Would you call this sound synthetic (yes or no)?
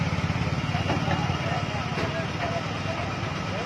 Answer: no